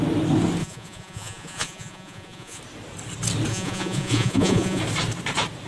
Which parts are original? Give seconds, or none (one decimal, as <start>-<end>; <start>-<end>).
0.0-0.6; 2.6-3.5; 4.8-5.7